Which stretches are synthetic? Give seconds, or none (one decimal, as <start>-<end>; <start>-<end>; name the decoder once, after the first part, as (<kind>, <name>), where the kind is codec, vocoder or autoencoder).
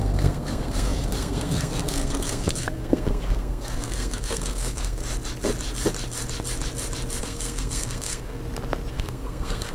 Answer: 0.0-5.0 (codec, SNAC); 7.2-8.4; 8.9-9.7